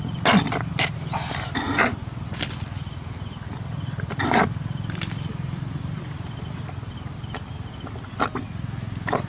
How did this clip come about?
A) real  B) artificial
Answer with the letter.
A